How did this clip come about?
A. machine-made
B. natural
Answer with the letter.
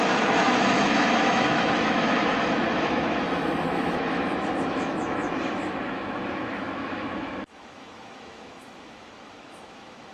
A